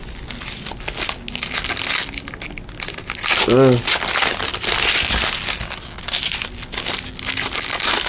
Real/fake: real